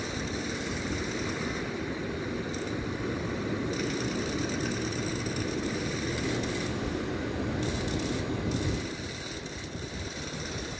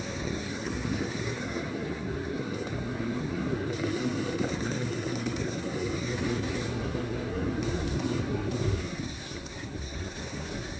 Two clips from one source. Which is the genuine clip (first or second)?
first